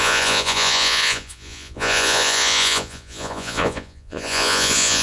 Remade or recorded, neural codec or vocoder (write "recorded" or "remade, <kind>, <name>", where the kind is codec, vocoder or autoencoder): remade, vocoder, Vocos